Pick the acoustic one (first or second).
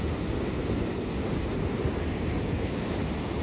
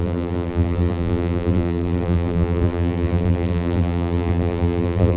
first